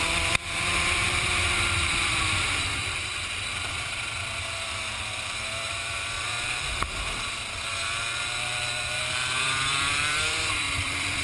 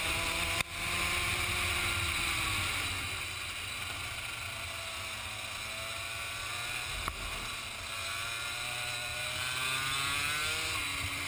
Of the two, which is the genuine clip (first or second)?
second